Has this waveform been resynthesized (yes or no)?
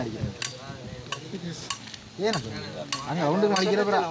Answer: no